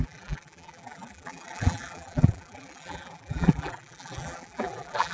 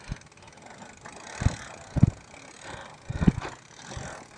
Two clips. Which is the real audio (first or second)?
second